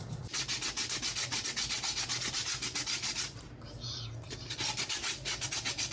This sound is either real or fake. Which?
real